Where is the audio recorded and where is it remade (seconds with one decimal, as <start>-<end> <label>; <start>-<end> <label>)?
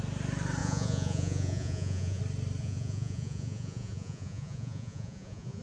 0.0-0.6 recorded; 0.6-2.2 remade; 2.2-2.6 recorded; 2.6-5.6 remade